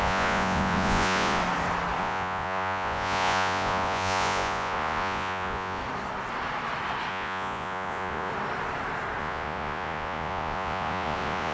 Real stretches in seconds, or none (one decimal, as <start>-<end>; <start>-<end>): 1.4-2.0; 5.8-7.1; 8.3-9.2